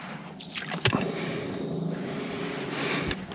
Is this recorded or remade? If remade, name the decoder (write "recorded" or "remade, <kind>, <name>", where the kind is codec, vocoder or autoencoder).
recorded